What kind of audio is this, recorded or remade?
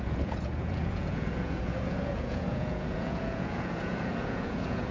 remade